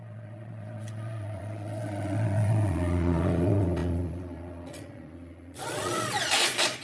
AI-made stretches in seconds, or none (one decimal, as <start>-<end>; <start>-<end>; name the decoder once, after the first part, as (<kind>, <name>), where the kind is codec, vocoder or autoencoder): 0.0-6.8 (vocoder, Vocos)